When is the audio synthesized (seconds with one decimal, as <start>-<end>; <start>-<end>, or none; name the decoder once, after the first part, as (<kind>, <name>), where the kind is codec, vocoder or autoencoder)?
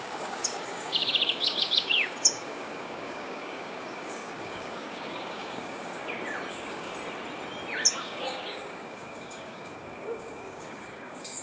0.0-6.0 (codec, DAC); 6.5-6.9; 7.9-11.4